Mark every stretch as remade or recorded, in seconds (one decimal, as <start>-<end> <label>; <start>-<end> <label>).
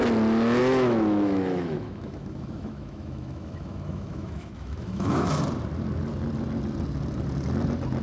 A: 0.0-0.6 recorded; 0.6-5.4 remade; 5.4-8.0 recorded